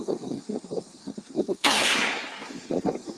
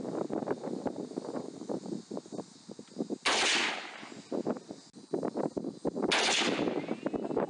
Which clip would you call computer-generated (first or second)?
first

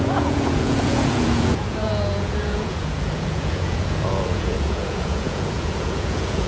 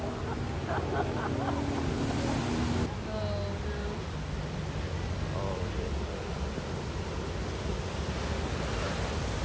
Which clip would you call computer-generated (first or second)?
first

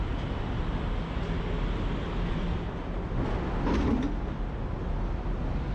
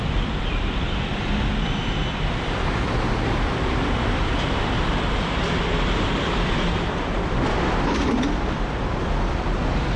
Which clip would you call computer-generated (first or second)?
second